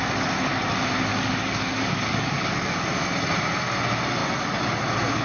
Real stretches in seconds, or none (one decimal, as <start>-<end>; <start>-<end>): 0.0-1.1; 2.8-5.2